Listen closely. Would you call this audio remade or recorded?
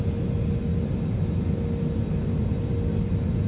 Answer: recorded